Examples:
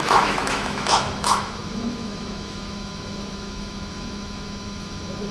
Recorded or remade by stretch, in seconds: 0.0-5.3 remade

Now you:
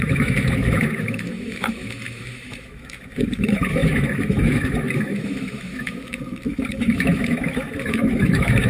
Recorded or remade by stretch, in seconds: 0.0-8.7 remade

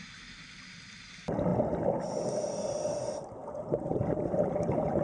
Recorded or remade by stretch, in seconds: 0.0-5.0 recorded

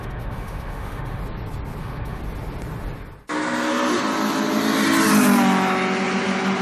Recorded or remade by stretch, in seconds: 0.0-1.2 remade; 1.2-1.8 recorded; 1.8-2.2 remade; 2.2-6.6 recorded

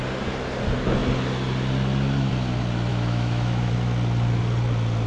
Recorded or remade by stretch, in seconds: 0.0-2.9 recorded; 2.9-3.7 remade; 3.7-5.1 recorded

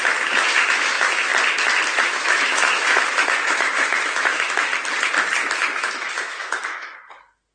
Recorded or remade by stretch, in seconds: 0.0-1.3 remade; 1.3-2.0 recorded; 2.0-4.7 remade; 4.7-5.6 recorded; 5.6-7.5 remade

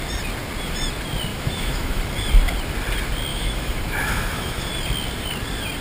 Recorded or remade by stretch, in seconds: 0.0-1.3 recorded; 1.3-2.0 remade; 2.0-3.3 recorded; 3.3-4.7 remade; 4.7-5.8 recorded